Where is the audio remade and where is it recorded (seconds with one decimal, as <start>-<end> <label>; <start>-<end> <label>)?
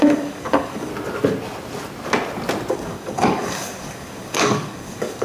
0.0-0.9 remade; 0.9-2.7 recorded; 2.7-5.2 remade